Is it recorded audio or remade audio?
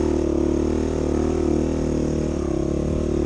recorded